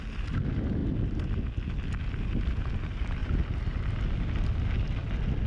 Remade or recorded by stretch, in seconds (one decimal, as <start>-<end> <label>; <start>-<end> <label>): 0.0-5.5 recorded